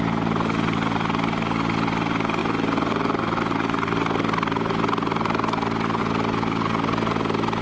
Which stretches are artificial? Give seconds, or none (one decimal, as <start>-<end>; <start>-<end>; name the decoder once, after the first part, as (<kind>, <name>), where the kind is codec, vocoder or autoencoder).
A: none

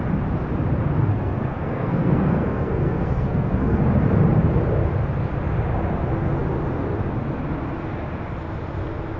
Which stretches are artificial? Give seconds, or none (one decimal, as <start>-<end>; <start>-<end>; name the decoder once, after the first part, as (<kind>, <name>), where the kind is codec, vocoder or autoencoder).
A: 1.1-3.8 (codec, SNAC)

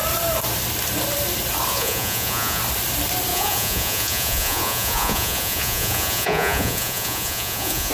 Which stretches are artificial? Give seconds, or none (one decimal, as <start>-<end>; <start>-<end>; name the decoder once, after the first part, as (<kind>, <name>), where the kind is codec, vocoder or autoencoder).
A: 1.7-2.6 (vocoder, Vocos); 3.3-7.9

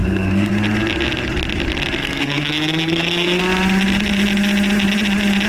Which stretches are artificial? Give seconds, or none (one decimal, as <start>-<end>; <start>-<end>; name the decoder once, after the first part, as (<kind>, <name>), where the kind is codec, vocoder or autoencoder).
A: 0.0-0.5 (codec, SNAC); 2.0-3.4

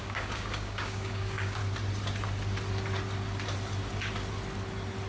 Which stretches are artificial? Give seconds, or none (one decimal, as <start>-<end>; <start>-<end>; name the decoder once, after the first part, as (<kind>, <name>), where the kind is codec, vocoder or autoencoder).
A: 0.0-1.6 (codec, DAC)

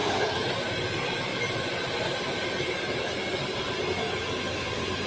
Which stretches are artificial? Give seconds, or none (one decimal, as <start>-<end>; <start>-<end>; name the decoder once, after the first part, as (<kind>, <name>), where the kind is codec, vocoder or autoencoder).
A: none

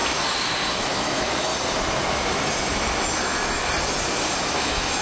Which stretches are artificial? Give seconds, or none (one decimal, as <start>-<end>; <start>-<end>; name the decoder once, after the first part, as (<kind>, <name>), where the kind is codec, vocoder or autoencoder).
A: 0.7-1.5 (autoencoder, DAC-VAE); 4.5-5.0